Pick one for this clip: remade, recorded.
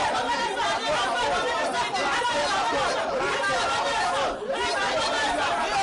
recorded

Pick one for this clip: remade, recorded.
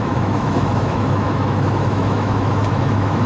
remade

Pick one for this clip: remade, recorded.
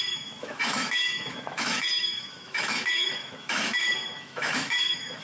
remade